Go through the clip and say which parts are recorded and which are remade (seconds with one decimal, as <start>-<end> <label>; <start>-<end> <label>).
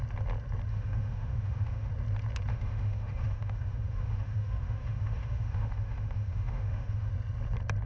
0.0-0.7 recorded; 0.7-1.9 remade; 1.9-2.5 recorded; 2.5-7.1 remade; 7.1-7.9 recorded